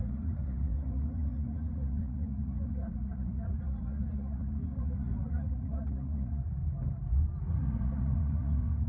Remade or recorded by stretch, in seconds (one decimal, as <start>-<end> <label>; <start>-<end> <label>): 0.0-6.6 remade; 6.6-7.5 recorded; 7.5-8.9 remade